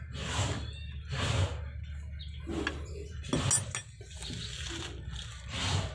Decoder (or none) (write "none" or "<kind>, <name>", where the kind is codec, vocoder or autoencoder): none